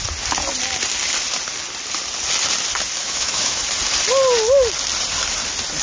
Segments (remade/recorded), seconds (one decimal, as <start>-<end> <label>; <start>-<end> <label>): 0.0-3.0 recorded; 3.0-3.6 remade; 3.6-5.8 recorded